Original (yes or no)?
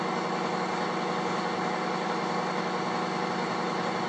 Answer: yes